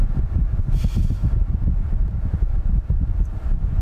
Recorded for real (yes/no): no